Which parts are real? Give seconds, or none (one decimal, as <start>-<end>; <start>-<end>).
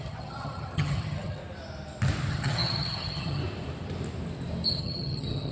1.4-2.3; 3.4-4.8